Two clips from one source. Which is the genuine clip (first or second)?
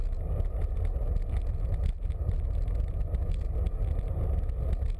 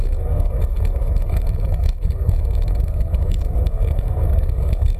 first